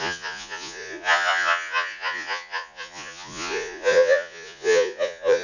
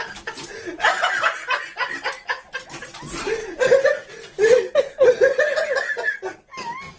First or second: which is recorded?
second